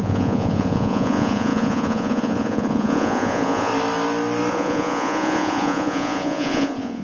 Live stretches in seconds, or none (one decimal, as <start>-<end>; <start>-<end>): 3.7-4.5